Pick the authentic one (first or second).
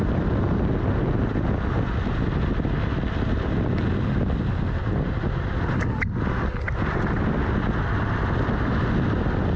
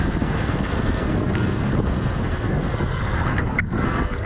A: first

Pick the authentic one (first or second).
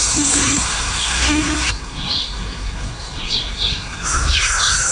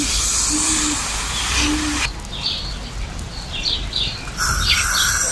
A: second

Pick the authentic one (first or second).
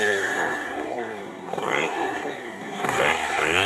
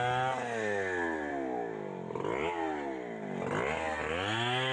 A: second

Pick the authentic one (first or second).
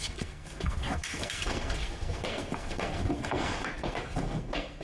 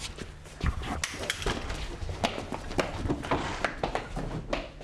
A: second